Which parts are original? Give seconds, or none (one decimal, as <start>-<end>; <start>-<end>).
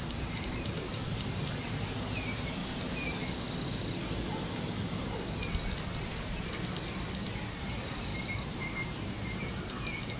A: 2.6-7.6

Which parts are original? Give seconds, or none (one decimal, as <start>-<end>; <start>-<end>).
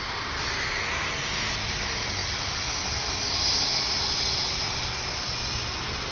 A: 0.0-6.1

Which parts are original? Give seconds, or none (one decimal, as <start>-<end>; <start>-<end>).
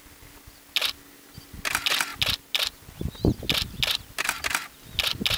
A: 0.0-5.4